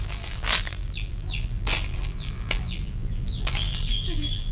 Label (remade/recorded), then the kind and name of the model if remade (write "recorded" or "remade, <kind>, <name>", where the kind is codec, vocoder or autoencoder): remade, vocoder, BigVGAN v2